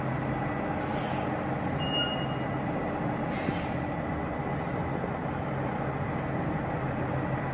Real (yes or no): yes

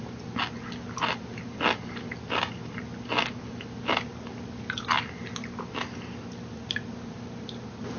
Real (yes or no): yes